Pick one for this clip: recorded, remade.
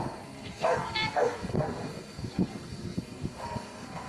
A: remade